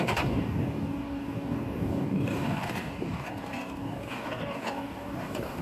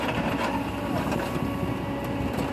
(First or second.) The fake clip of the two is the first